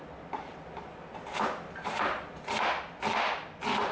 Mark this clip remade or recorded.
recorded